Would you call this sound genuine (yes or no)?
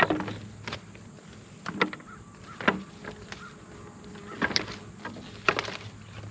yes